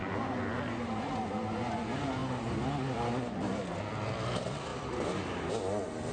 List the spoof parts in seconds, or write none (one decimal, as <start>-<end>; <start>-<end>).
none